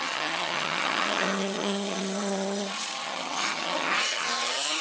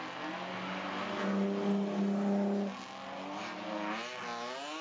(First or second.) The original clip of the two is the second